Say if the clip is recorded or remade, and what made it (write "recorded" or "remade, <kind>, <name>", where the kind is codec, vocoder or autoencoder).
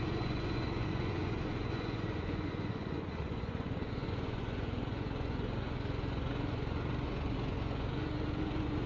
remade, vocoder, Vocos